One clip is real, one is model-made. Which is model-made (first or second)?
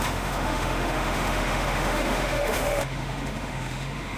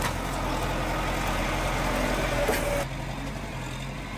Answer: first